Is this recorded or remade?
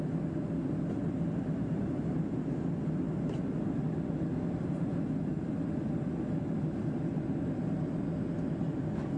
recorded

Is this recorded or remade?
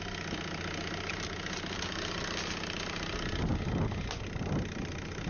recorded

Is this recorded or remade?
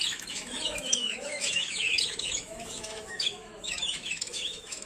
remade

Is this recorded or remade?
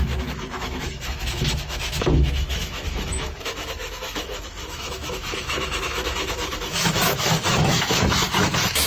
remade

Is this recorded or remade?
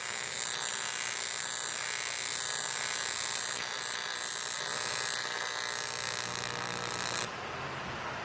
recorded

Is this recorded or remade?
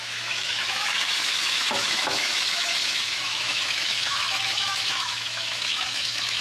remade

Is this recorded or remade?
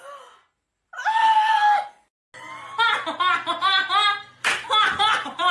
recorded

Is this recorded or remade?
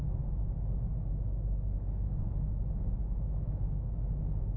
remade